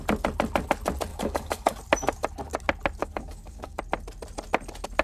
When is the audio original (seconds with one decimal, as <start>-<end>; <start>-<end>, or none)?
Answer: 0.0-1.1; 1.8-3.0; 3.8-5.0

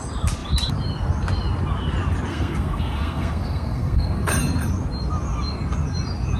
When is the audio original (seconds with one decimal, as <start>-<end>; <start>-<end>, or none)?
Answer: 0.0-2.3; 4.3-6.4